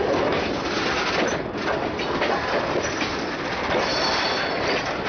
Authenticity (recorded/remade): recorded